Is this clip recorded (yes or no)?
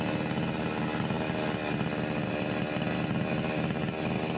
yes